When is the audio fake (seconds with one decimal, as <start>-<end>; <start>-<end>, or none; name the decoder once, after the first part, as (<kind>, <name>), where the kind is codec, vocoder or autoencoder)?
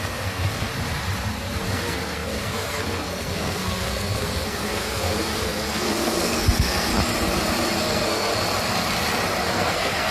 0.0-0.7 (codec, SNAC); 1.6-6.9; 7.8-8.3; 9.4-10.1